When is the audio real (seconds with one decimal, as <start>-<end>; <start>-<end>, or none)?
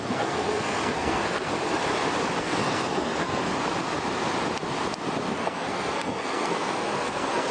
1.5-2.4; 3.4-5.3